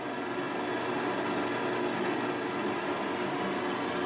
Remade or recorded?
recorded